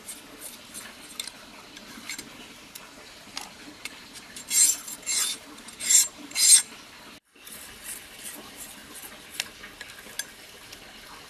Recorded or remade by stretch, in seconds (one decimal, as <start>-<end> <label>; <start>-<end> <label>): 0.0-1.8 recorded; 1.8-6.7 remade; 6.7-11.3 recorded